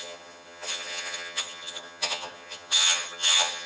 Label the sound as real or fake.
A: fake